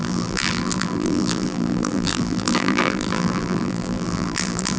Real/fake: fake